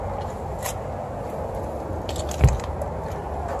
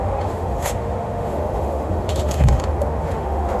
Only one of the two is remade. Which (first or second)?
second